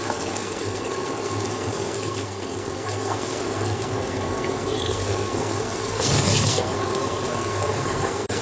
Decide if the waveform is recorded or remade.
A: remade